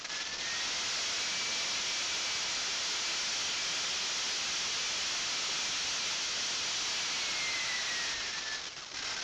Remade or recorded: recorded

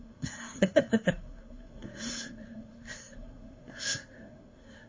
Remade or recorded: remade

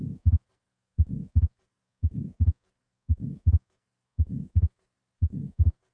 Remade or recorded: remade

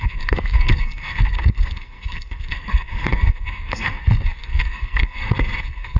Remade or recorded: remade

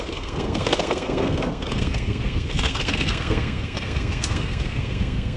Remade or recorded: remade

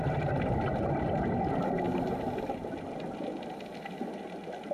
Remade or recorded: recorded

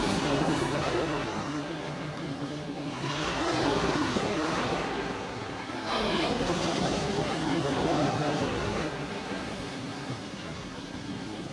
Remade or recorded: remade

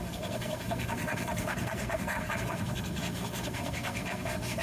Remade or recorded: remade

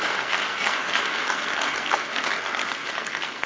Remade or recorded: remade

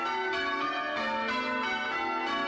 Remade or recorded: recorded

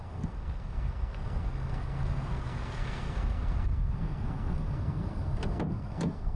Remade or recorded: remade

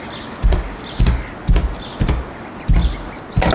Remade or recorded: recorded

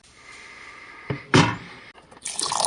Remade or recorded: recorded